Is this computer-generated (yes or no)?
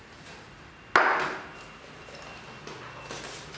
no